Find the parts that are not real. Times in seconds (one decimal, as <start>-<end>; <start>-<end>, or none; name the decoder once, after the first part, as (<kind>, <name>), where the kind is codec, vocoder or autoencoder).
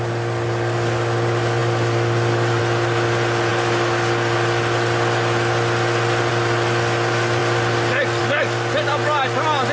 none